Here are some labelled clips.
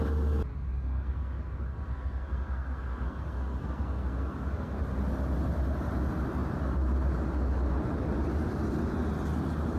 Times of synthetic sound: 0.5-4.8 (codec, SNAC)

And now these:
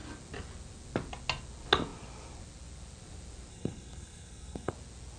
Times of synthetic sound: 3.5-4.7 (codec, SNAC)

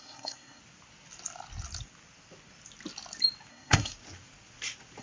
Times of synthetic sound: 0.0-0.6 (codec, SNAC); 3.5-3.9

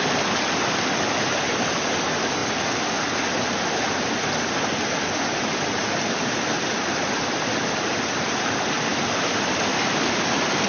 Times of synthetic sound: none

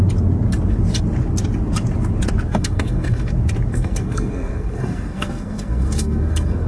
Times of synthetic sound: 2.5-3.3 (codec, SNAC); 3.7-6.7